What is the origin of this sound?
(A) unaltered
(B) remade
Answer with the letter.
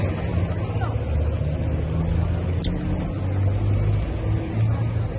A